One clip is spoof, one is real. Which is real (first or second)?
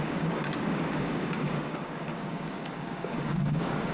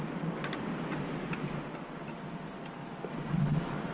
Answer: second